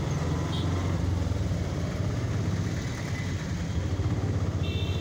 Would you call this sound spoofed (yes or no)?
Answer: no